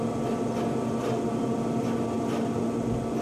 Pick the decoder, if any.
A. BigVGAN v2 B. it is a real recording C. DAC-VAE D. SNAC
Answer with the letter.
B